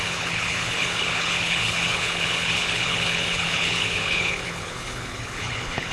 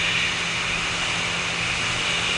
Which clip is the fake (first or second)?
first